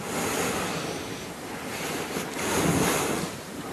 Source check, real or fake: real